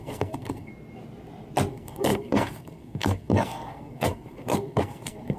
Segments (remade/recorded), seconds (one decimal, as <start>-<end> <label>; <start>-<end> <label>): 0.0-0.7 remade; 0.7-1.7 recorded; 1.7-5.4 remade